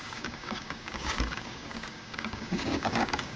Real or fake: fake